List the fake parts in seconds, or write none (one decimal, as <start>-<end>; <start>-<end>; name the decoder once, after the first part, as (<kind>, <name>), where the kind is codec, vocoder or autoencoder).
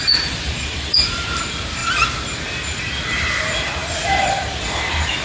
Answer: 0.0-1.8 (vocoder, BigVGAN v2); 2.8-5.2